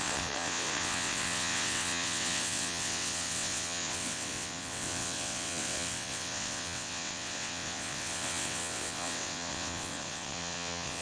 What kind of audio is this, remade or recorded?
remade